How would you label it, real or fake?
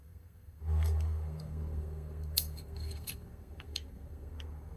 fake